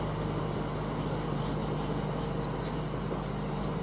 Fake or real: real